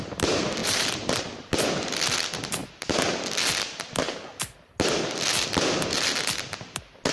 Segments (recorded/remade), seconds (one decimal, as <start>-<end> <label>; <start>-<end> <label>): 0.0-0.6 recorded; 0.6-1.2 remade; 1.2-7.1 recorded